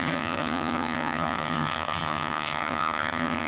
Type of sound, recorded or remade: remade